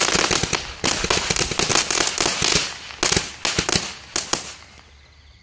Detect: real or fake real